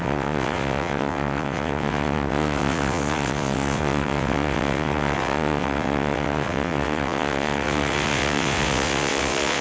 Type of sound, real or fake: fake